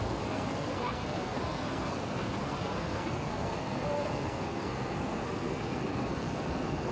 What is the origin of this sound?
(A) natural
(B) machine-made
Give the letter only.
B